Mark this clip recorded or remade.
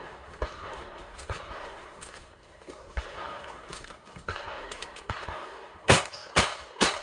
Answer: remade